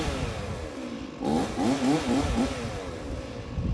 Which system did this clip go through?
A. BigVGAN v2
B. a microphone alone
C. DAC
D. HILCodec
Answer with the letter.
A